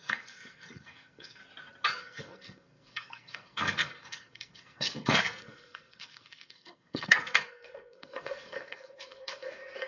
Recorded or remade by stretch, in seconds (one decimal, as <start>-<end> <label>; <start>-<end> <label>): 0.0-1.4 remade; 1.4-2.0 recorded; 2.0-9.9 remade